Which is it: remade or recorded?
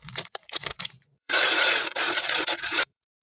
remade